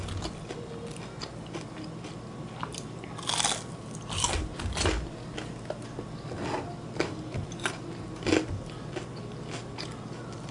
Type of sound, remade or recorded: recorded